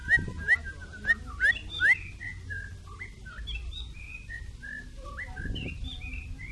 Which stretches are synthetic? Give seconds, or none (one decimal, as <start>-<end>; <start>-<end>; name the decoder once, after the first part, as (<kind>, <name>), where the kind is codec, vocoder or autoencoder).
none